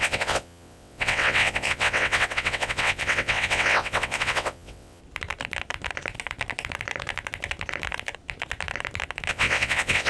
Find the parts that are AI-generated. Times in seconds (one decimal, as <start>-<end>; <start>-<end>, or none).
0.0-5.0; 9.3-10.1